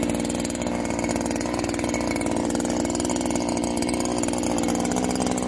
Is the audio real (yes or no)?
yes